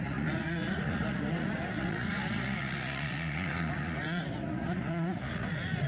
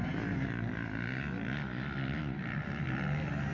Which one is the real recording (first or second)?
second